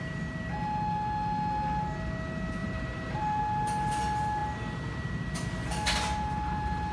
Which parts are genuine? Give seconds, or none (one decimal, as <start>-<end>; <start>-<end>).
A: 0.0-2.6; 3.4-6.9